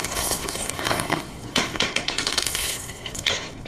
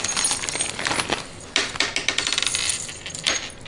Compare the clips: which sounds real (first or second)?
second